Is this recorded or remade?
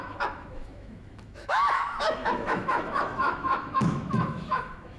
remade